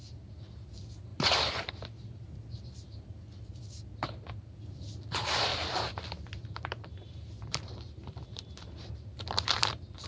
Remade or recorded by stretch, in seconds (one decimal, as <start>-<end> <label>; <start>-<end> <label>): 0.0-1.1 recorded; 1.1-1.7 remade; 1.7-5.5 recorded; 5.5-10.1 remade